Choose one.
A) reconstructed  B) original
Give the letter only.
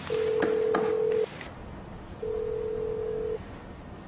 B